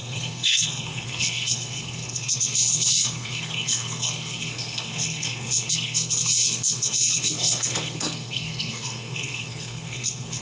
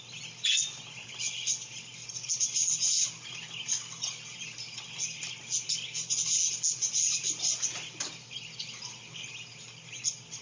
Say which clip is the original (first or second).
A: second